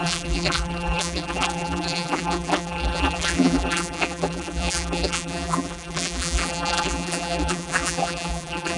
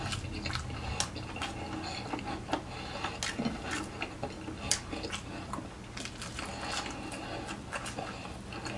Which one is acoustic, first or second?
second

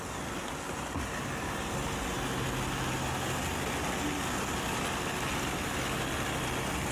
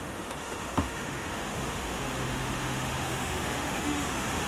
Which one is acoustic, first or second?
first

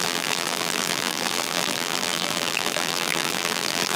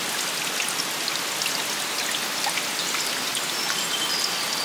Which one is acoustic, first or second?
second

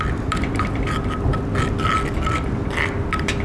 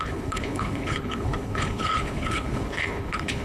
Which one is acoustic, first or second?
first